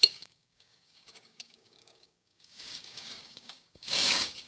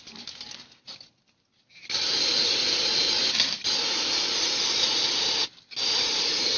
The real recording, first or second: second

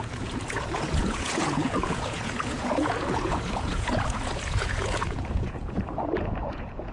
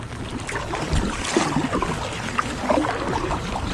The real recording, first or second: second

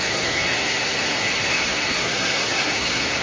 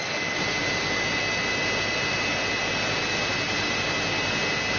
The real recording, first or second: second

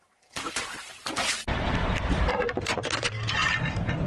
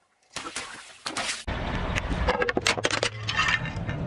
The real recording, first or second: second